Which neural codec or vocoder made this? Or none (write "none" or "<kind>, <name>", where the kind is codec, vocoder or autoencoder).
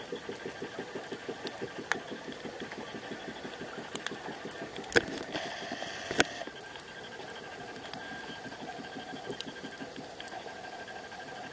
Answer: vocoder, BigVGAN v2